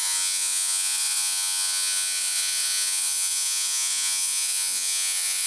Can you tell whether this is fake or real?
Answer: fake